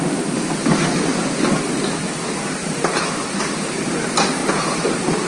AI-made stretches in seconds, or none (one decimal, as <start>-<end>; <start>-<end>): 2.0-3.9; 4.4-5.3